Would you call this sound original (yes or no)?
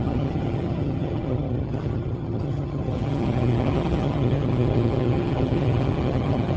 no